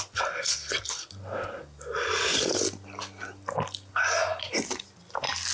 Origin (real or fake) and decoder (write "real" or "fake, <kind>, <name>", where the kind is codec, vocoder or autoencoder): real